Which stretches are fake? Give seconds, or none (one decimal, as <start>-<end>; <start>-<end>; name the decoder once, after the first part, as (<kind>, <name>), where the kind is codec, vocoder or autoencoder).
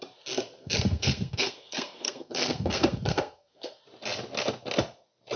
0.6-3.8 (codec, SNAC)